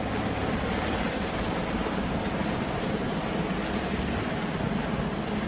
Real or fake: real